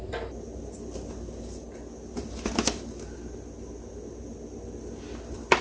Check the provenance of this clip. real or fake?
real